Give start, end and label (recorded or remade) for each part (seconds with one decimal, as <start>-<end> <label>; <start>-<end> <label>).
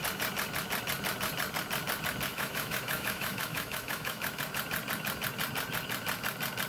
0.0-2.3 recorded; 2.3-4.4 remade; 4.4-6.7 recorded